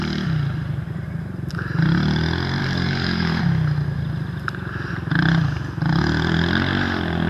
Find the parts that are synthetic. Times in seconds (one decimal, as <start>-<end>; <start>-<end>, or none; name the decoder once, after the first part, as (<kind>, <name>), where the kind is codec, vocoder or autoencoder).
2.6-3.4 (codec, DAC)